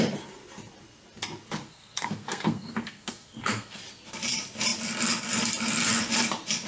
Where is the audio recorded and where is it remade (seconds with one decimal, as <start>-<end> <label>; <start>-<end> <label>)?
0.0-1.6 recorded; 1.6-3.8 remade; 3.8-6.7 recorded